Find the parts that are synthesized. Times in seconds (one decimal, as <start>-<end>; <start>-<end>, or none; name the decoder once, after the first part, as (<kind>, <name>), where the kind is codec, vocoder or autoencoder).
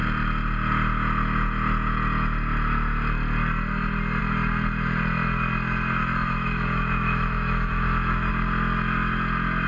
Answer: 6.0-8.3 (autoencoder, DAC-VAE)